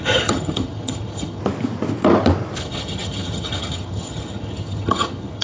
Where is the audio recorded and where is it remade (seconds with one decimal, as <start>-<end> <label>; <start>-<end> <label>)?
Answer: 0.0-1.4 remade; 1.4-2.6 recorded; 2.6-5.4 remade